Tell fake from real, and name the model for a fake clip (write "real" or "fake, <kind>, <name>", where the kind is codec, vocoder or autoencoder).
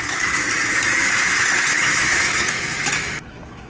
fake, autoencoder, DAC-VAE